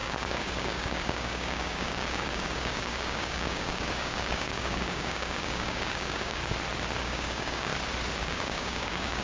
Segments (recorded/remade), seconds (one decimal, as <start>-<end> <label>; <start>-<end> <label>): 0.0-6.4 remade; 6.4-7.0 recorded; 7.0-7.7 remade; 7.7-8.2 recorded; 8.2-9.2 remade